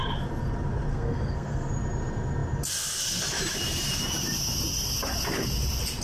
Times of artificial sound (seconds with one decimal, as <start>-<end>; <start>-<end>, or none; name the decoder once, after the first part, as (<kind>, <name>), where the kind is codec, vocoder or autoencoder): 0.9-1.7 (codec, SNAC)